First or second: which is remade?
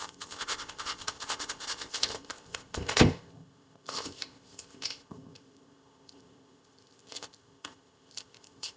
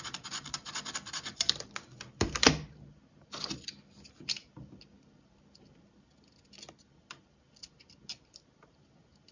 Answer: first